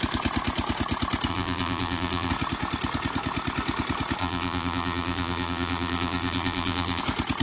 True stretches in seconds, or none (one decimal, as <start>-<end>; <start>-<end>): 0.0-1.3; 2.3-4.2; 7.0-7.4